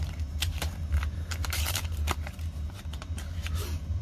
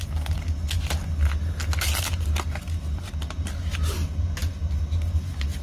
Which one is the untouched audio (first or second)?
second